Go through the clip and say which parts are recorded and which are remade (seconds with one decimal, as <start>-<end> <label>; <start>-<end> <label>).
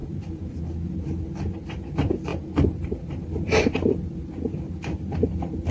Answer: 0.0-0.6 remade; 0.6-2.3 recorded; 2.3-5.1 remade; 5.1-5.7 recorded